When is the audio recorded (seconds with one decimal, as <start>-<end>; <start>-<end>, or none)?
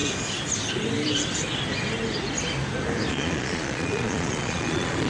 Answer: 0.0-3.1